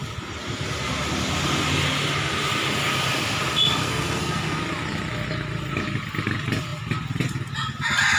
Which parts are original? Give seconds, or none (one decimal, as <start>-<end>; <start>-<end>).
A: 0.0-3.8; 4.6-8.2